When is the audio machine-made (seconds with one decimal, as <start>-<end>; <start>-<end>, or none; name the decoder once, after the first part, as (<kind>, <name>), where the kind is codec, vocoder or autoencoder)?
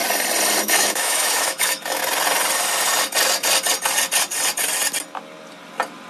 0.6-2.0 (autoencoder, DAC-VAE)